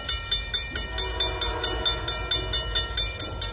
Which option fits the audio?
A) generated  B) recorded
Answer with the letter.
B